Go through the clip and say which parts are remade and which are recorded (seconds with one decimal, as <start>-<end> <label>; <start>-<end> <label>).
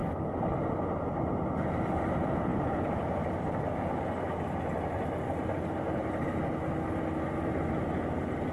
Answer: 0.0-8.5 recorded